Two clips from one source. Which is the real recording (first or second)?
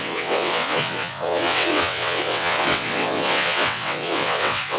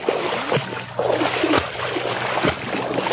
second